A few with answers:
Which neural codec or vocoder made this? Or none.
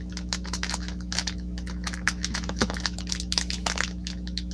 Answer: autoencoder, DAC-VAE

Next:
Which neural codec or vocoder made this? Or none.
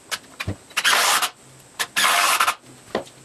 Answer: none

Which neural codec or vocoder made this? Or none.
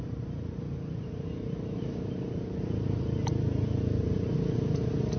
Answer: none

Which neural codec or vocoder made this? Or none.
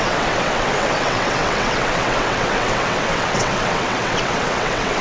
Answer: vocoder, WaveNeXt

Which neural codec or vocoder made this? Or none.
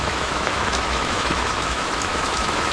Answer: autoencoder, DAC-VAE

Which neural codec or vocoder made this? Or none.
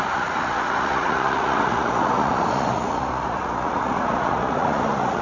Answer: vocoder, Vocos